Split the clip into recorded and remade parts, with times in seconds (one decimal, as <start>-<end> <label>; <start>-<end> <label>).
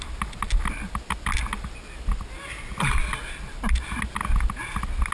0.0-5.1 recorded